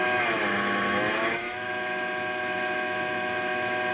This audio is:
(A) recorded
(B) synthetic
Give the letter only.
B